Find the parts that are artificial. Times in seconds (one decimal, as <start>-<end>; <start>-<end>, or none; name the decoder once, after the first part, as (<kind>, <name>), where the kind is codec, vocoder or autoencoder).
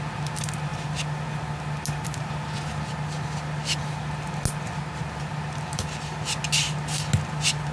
none